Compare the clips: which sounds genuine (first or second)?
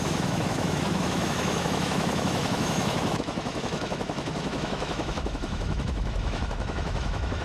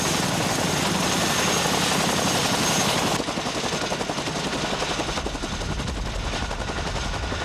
second